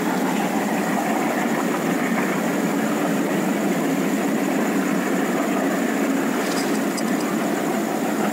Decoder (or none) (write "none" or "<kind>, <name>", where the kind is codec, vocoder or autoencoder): none